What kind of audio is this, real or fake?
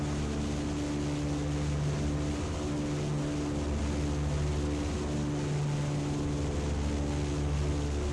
real